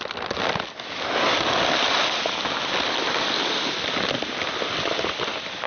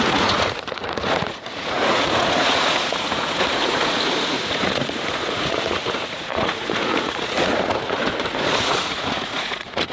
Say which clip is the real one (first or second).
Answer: first